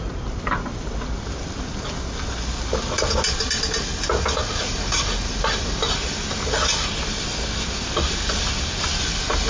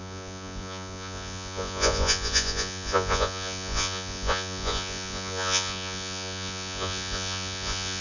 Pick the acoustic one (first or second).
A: first